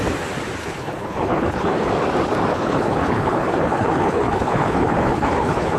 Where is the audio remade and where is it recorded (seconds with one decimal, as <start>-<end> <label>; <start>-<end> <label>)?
0.0-0.6 recorded; 0.6-1.9 remade; 1.9-2.5 recorded; 2.5-5.8 remade